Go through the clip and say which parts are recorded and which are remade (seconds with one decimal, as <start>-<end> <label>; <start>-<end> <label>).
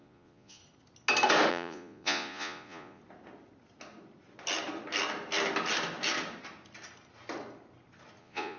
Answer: 0.0-0.6 remade; 0.6-1.5 recorded; 1.5-3.0 remade; 3.0-8.2 recorded; 8.2-8.6 remade